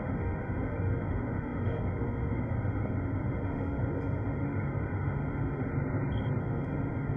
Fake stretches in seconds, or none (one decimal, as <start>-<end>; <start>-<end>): 0.0-5.7; 6.4-7.2